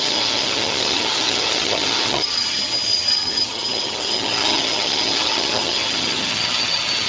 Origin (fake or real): fake